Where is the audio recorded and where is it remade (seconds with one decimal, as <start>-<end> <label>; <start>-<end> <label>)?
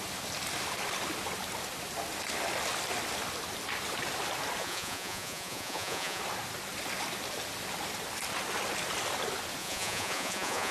0.0-4.6 recorded; 4.6-6.2 remade; 6.2-9.6 recorded; 9.6-10.7 remade